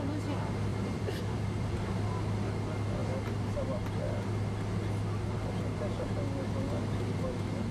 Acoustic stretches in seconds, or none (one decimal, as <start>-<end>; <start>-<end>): 0.0-0.7; 1.7-7.7